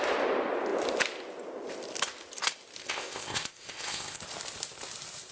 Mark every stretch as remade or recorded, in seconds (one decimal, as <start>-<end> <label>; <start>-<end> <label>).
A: 0.0-2.8 recorded; 2.8-4.2 remade; 4.2-5.3 recorded